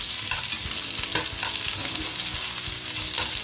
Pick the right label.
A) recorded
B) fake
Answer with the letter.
A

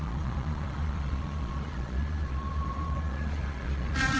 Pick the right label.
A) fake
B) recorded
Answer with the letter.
A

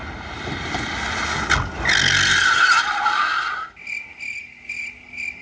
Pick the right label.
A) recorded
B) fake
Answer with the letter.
A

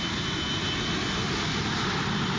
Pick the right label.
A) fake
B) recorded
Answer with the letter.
B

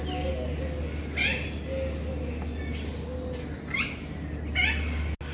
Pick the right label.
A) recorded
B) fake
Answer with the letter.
A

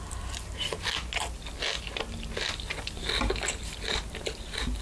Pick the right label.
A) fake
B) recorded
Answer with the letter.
B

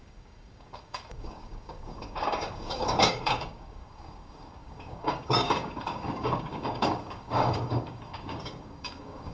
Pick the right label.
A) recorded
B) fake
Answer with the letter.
B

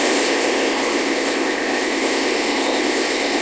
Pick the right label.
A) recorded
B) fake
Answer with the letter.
B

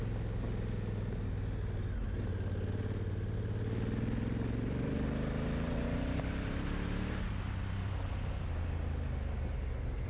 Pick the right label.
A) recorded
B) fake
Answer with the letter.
A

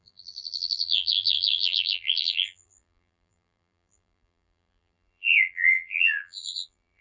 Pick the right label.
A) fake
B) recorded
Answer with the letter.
A